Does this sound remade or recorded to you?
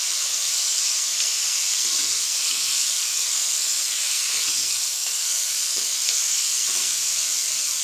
remade